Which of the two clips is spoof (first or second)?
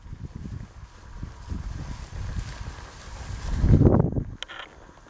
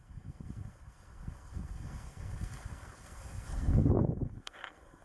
second